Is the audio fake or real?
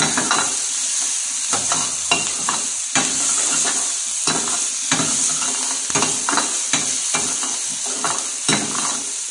real